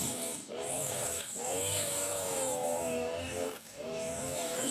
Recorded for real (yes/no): no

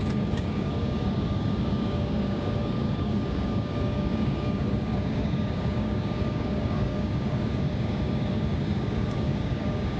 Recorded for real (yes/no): no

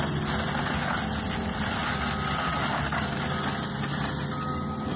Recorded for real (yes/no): yes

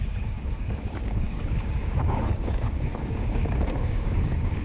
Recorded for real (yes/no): no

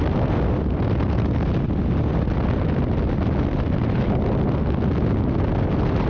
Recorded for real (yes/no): yes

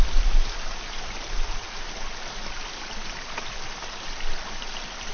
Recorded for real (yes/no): yes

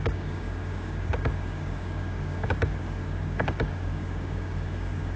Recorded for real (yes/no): no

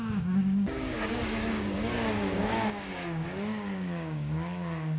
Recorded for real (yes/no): no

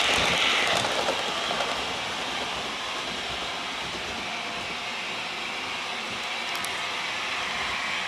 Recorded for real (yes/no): yes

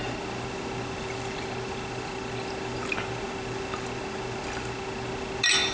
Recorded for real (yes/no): yes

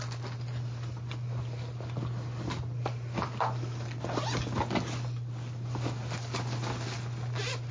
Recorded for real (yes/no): yes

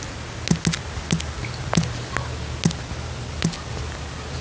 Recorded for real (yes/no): yes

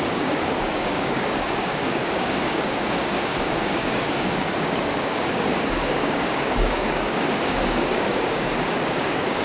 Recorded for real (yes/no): no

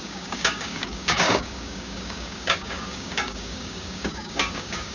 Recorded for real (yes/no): no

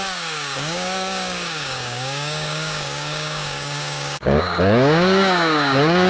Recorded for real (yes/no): no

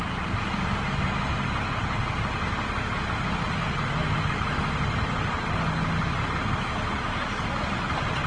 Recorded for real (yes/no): yes